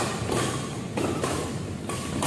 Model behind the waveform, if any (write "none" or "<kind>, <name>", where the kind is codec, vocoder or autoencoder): none